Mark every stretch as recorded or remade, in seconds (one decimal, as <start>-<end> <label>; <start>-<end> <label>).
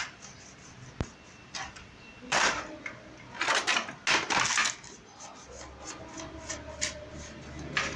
0.0-8.0 recorded